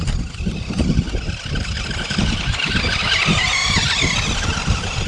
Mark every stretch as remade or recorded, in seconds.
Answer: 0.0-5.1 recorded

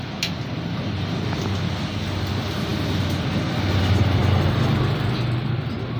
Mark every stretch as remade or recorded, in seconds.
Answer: 0.0-6.0 recorded

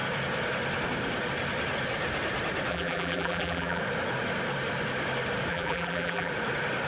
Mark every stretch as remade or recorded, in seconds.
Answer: 0.0-2.7 recorded; 2.7-3.8 remade; 3.8-5.5 recorded; 5.5-6.3 remade; 6.3-6.9 recorded

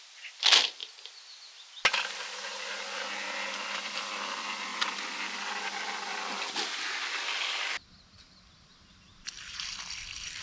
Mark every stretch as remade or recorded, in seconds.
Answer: 0.0-0.8 remade; 0.8-3.7 recorded; 3.7-4.7 remade; 4.7-8.9 recorded; 8.9-10.4 remade